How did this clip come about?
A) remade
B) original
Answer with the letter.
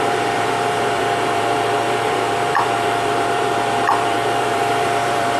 A